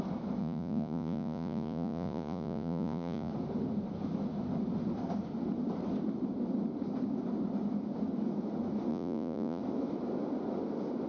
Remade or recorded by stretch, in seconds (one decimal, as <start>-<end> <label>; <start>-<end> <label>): 0.0-0.4 recorded; 0.4-3.3 remade; 3.3-8.9 recorded; 8.9-9.6 remade; 9.6-11.1 recorded